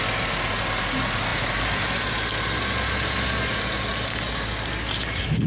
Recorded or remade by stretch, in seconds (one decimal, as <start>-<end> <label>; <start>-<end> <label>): 0.0-5.5 recorded